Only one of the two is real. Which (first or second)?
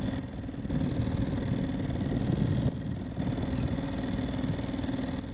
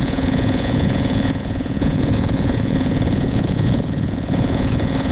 first